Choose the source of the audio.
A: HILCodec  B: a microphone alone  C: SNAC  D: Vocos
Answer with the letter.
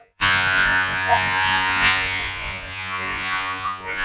D